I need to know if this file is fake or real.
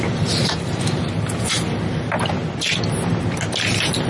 real